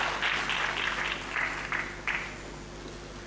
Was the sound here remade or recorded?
recorded